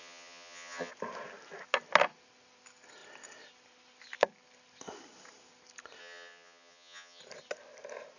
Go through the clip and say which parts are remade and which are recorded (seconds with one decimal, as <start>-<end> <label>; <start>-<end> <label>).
0.0-0.9 remade; 0.9-6.0 recorded; 6.0-7.2 remade; 7.2-8.2 recorded

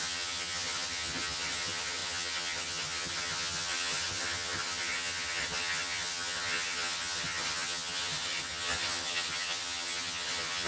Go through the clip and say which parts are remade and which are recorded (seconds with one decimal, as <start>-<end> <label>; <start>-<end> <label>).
0.0-10.7 remade

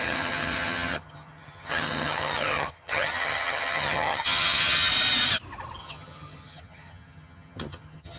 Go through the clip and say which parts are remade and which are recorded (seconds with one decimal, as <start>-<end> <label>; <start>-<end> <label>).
0.0-4.9 remade; 4.9-5.8 recorded; 5.8-8.2 remade

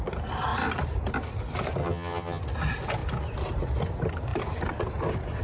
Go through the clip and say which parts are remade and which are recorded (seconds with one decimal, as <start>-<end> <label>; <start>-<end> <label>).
0.0-1.8 recorded; 1.8-2.4 remade; 2.4-5.4 recorded

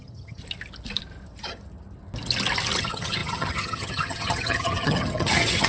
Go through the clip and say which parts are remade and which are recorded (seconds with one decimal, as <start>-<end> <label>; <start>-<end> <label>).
0.0-0.4 remade; 0.4-2.8 recorded; 2.8-5.7 remade

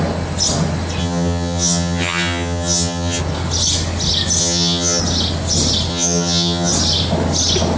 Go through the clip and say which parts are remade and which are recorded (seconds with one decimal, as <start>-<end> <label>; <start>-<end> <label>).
0.0-1.0 recorded; 1.0-3.2 remade; 3.2-4.4 recorded; 4.4-5.0 remade; 5.0-5.9 recorded; 5.9-6.7 remade; 6.7-7.8 recorded

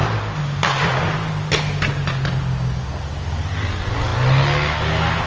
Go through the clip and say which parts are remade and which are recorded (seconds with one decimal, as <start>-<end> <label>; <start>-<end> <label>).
0.0-5.3 recorded